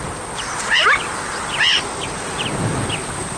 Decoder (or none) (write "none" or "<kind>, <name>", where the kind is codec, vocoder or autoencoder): vocoder, BigVGAN v2